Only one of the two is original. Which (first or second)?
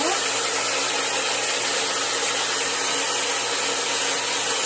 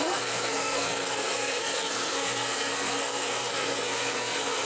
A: first